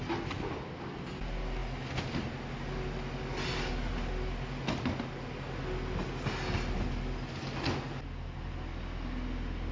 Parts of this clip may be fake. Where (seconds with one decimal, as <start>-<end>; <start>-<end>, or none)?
none